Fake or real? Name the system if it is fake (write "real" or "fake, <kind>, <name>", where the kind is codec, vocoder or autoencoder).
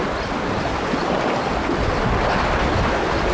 real